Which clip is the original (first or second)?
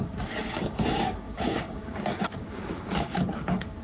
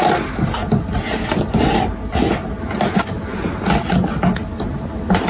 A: second